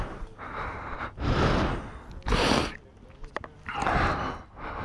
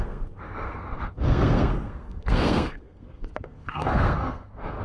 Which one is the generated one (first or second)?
second